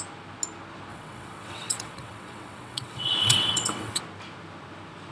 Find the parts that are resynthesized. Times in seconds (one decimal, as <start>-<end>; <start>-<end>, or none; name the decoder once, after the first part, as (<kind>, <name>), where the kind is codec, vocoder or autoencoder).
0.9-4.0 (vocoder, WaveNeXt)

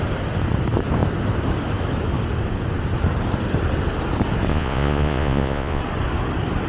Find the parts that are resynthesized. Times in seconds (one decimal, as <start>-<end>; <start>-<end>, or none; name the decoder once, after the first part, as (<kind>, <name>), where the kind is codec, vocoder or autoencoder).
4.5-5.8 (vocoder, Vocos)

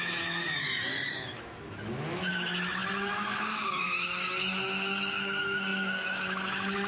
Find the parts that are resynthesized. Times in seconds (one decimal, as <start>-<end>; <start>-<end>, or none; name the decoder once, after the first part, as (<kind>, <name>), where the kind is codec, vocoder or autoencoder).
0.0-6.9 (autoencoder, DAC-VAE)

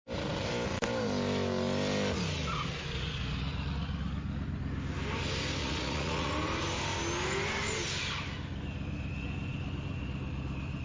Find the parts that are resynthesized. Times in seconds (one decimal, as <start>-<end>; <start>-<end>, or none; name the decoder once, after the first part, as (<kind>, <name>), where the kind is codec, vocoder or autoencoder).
5.6-6.3 (vocoder, Vocos)

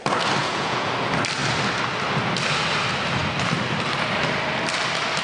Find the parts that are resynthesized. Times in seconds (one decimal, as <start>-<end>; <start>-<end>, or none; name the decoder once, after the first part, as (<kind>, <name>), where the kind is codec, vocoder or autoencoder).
0.4-0.9 (vocoder, Vocos)